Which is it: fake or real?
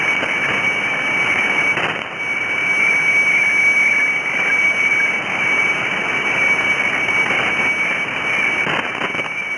real